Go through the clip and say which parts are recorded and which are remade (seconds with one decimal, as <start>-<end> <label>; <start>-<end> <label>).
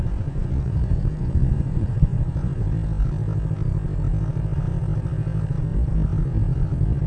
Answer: 0.0-2.6 remade; 2.6-7.1 recorded